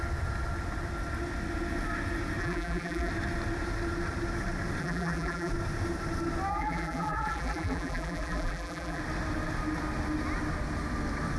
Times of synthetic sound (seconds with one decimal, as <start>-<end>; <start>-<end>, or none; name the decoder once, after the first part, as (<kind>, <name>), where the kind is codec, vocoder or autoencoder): 2.4-3.1 (vocoder, BigVGAN v2); 4.8-5.5; 6.5-9.0